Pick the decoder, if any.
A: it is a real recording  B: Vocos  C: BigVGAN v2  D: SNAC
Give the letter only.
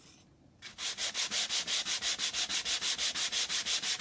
A